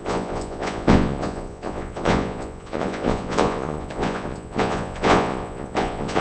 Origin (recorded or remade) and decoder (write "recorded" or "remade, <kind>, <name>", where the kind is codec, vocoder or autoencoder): remade, vocoder, Vocos